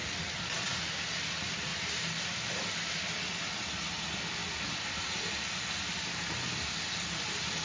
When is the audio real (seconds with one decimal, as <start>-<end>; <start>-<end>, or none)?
0.7-1.7; 4.0-4.4; 5.3-7.6